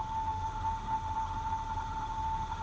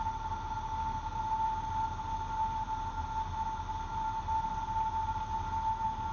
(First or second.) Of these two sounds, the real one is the second